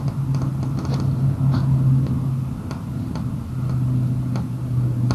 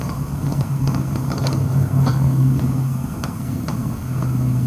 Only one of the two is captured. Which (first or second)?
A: first